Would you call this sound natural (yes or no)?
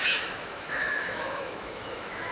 no